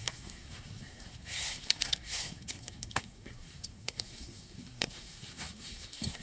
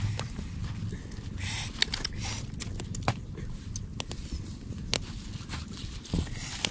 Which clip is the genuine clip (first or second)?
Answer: second